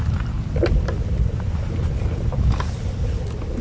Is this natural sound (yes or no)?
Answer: yes